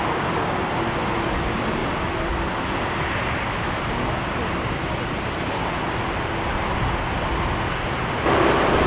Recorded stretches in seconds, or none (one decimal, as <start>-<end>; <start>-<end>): 0.0-8.9